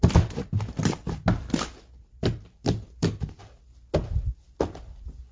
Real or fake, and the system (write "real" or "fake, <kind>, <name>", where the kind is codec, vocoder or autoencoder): real